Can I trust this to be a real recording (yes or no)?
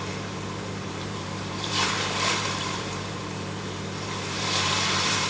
no